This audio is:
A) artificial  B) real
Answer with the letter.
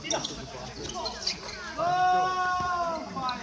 B